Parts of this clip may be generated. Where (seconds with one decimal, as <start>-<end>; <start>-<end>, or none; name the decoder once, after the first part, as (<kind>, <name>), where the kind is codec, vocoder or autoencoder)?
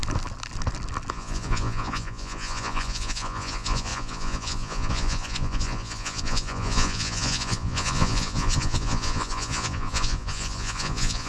1.1-11.3 (vocoder, Vocos)